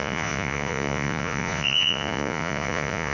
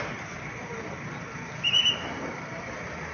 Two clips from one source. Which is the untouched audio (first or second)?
second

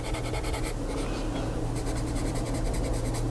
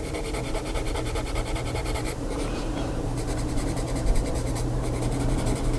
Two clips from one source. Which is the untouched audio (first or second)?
first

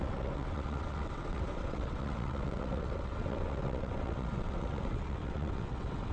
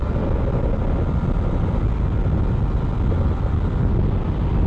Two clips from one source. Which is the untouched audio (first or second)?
second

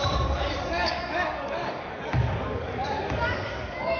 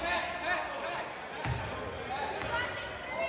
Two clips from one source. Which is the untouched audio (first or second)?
second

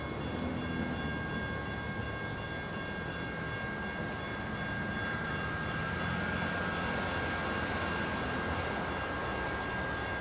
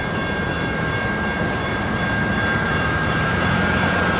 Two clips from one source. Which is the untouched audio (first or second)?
first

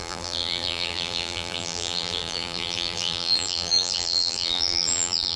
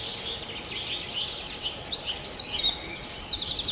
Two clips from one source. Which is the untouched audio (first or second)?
second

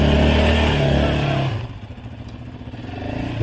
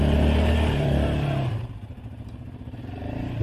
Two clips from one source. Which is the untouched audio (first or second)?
first